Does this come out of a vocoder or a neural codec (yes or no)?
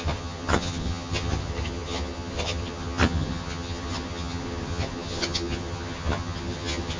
yes